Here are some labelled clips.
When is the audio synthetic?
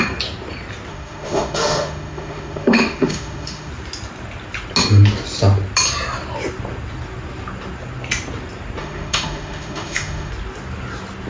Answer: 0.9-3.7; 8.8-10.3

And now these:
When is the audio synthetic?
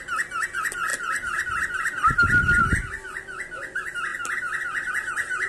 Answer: none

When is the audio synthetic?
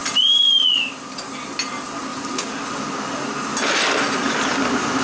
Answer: none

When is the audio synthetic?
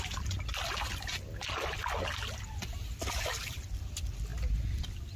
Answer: none